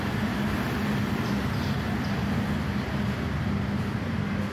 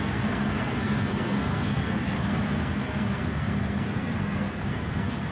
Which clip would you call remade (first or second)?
second